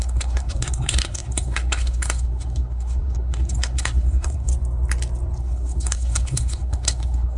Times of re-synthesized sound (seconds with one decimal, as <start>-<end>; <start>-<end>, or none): 0.0-4.5; 5.4-7.4